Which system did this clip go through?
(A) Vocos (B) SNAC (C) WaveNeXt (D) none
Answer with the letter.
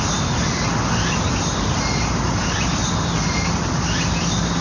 D